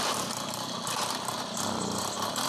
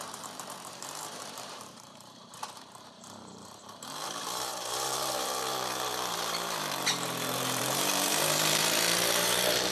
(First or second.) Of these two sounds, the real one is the first